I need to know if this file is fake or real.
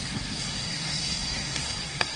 fake